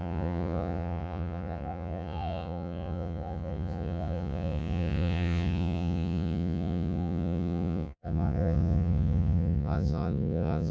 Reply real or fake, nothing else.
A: fake